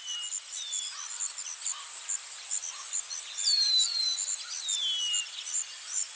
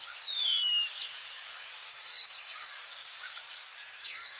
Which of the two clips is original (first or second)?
first